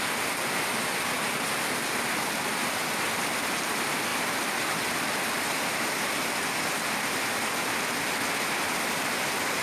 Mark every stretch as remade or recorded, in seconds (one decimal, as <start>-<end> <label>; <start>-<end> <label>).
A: 0.0-9.6 recorded